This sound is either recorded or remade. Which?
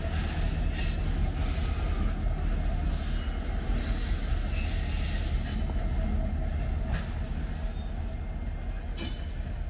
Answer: recorded